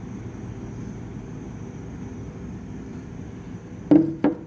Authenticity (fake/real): real